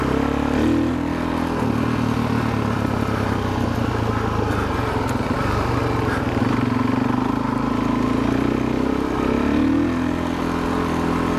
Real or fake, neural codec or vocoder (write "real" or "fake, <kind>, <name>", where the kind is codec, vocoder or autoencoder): real